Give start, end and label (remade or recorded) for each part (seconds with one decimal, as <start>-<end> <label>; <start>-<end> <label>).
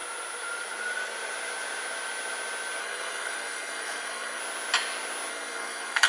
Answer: 0.0-2.8 recorded; 2.8-4.4 remade; 4.4-5.3 recorded; 5.3-6.1 remade